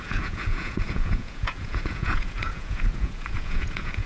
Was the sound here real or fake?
fake